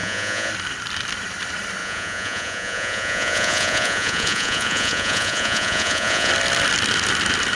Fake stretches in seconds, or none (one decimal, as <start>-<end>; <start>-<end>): 0.0-0.5; 1.8-6.3